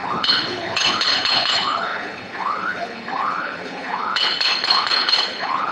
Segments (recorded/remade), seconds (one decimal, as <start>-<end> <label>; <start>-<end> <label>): 0.0-5.7 remade